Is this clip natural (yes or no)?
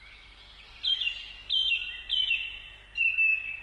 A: yes